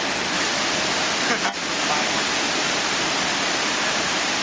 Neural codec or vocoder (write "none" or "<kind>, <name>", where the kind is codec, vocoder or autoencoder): none